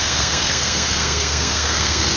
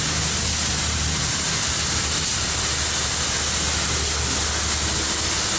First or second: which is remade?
first